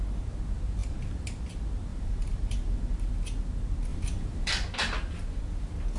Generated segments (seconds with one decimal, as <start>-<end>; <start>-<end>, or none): 1.9-3.1; 3.9-4.5

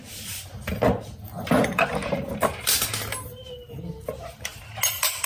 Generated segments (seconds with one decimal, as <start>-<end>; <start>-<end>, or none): 1.3-2.3

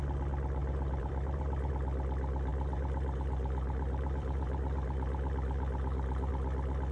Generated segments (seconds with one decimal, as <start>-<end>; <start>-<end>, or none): 0.6-1.7; 2.5-6.3

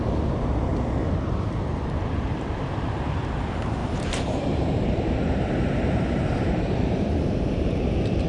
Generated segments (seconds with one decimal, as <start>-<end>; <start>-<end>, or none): 3.8-8.3